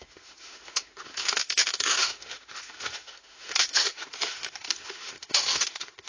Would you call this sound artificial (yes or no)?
yes